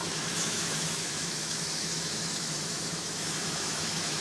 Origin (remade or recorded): remade